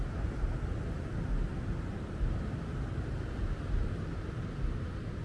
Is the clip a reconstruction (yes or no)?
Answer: no